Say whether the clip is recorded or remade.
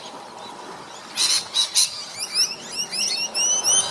recorded